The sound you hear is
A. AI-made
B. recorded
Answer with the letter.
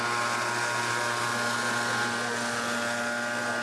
B